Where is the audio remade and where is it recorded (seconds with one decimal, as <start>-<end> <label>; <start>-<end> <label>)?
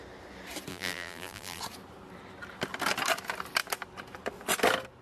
0.0-0.7 recorded; 0.7-1.6 remade; 1.6-5.0 recorded